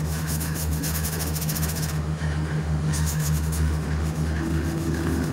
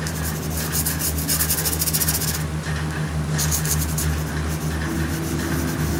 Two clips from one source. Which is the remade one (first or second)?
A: first